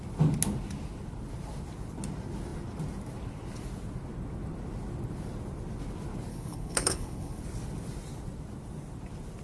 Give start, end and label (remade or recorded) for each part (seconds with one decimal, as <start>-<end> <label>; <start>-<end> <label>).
0.0-6.3 recorded; 6.3-7.4 remade; 7.4-9.4 recorded